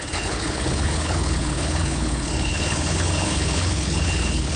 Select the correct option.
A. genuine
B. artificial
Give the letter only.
B